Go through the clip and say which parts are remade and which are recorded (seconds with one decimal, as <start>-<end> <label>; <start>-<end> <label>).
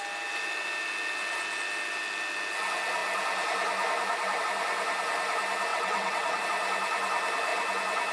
0.0-5.7 recorded; 5.7-6.4 remade; 6.4-8.1 recorded